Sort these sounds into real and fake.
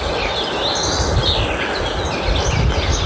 real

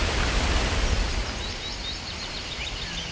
real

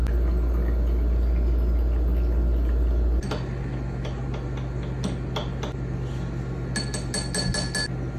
real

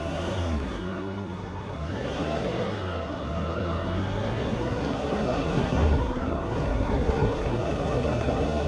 fake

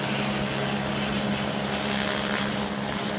real